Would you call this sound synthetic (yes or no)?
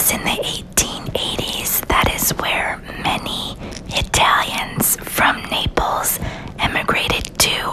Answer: no